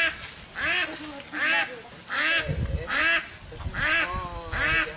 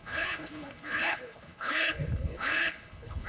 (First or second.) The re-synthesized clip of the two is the second